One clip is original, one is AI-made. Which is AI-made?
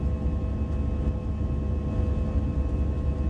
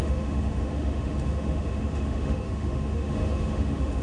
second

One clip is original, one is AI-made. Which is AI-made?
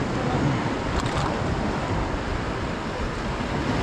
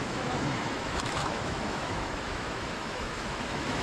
second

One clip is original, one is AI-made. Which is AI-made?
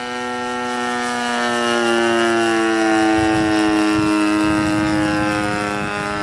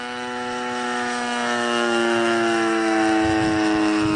second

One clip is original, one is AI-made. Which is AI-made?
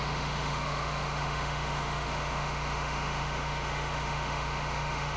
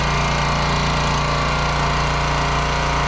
first